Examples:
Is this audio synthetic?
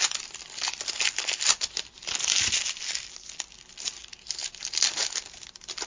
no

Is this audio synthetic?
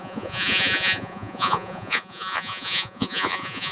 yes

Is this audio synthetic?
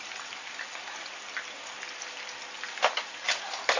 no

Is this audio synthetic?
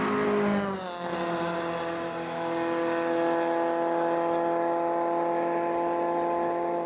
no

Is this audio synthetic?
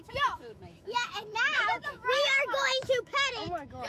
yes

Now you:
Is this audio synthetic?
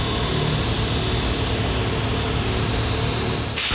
no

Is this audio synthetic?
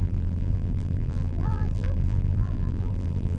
yes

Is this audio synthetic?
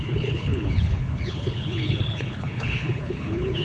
yes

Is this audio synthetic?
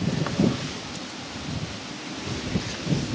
no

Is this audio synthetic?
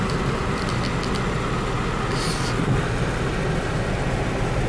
no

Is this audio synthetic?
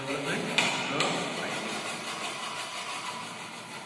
no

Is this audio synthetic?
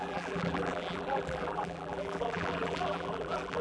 yes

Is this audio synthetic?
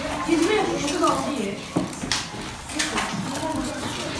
no